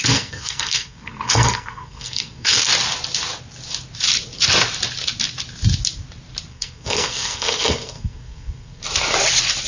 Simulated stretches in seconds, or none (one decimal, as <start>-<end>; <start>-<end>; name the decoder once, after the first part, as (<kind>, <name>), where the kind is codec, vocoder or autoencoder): 0.0-2.7 (codec, SNAC); 6.5-8.8